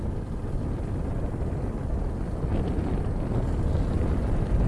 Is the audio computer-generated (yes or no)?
no